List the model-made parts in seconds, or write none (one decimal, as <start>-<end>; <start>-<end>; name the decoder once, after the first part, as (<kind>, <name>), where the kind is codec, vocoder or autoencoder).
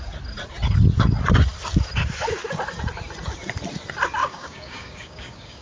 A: 4.2-5.6 (codec, DAC)